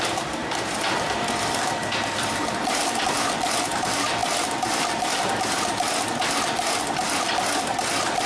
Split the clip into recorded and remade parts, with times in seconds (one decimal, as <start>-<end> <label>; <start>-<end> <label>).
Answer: 0.0-0.4 recorded; 0.4-3.3 remade; 3.3-4.2 recorded; 4.2-5.2 remade; 5.2-8.3 recorded